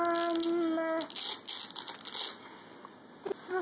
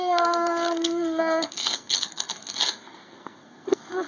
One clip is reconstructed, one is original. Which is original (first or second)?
first